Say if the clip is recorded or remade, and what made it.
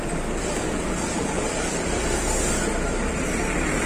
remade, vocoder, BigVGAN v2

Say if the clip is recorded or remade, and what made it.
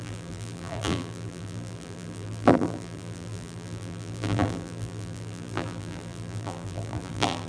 remade, vocoder, BigVGAN v2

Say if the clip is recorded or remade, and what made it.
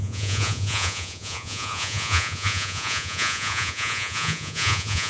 remade, vocoder, Vocos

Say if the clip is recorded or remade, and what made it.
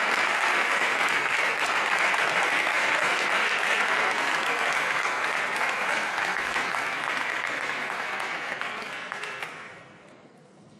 remade, codec, SNAC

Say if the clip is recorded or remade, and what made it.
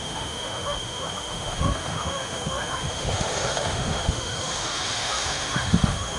remade, autoencoder, DAC-VAE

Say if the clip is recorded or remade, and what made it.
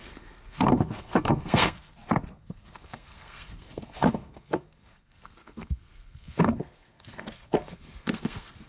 remade, codec, SNAC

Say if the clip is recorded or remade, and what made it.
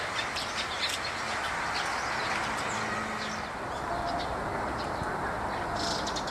recorded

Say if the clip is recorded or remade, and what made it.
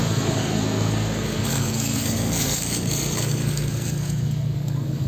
remade, codec, SNAC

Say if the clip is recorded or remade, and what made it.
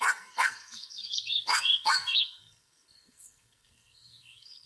remade, codec, SNAC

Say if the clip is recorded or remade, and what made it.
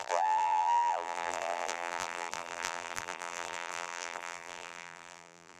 remade, vocoder, BigVGAN v2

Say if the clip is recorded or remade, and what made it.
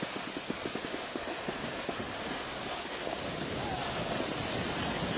recorded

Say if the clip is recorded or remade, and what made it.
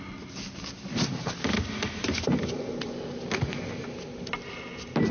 recorded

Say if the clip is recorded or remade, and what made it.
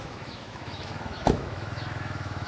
remade, autoencoder, DAC-VAE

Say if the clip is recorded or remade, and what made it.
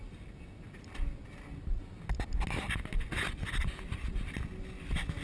recorded